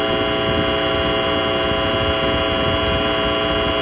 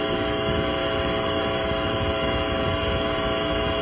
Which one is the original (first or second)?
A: first